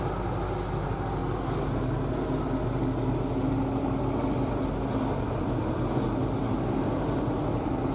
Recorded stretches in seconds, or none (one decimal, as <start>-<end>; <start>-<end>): 0.0-7.9